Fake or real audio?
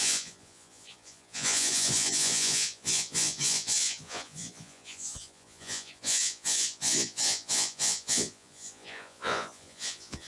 fake